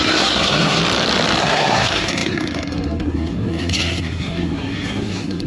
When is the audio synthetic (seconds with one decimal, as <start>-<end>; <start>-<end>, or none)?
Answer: 0.0-0.8; 1.4-5.5

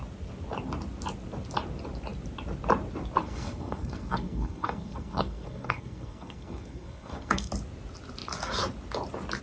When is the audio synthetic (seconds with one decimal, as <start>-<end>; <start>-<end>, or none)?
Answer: 3.2-7.5